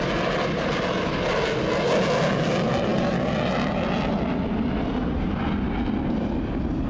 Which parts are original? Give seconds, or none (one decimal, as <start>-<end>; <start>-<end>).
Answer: 0.0-6.9